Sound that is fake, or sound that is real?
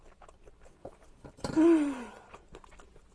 real